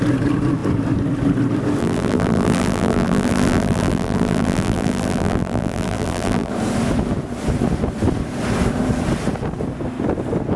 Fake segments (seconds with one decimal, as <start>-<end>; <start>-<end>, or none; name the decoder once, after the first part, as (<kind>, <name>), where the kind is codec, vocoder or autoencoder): 1.8-6.5 (vocoder, BigVGAN v2)